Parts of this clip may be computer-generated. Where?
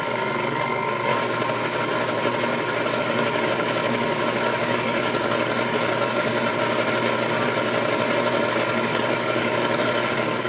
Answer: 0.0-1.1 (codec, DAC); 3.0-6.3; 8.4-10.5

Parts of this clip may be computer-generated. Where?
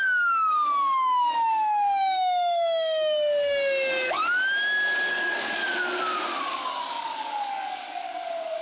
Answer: 0.0-4.2 (codec, DAC); 5.1-5.6; 6.4-8.6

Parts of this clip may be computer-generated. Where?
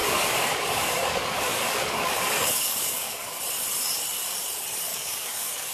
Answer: 0.0-3.4 (codec, DAC); 4.9-5.7